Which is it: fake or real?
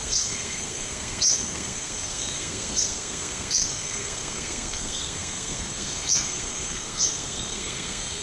fake